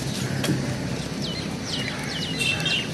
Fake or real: real